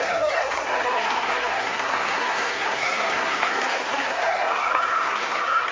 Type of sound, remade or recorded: remade